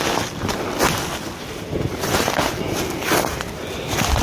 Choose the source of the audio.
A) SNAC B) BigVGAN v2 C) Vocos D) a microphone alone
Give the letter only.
D